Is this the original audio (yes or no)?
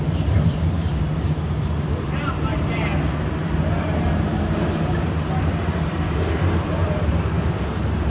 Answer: no